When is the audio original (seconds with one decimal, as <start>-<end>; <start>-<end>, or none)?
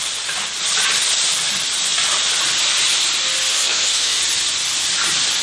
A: 0.0-3.5; 4.2-5.4